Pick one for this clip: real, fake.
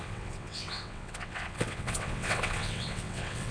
fake